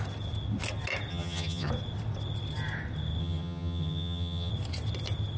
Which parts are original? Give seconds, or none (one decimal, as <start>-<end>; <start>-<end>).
0.0-1.1; 1.7-3.2; 4.5-5.4